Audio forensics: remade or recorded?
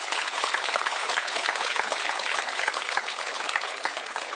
remade